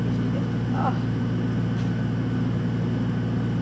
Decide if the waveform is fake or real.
real